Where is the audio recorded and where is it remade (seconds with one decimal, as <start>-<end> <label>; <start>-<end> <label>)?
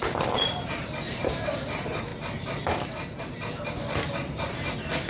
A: 0.0-5.1 recorded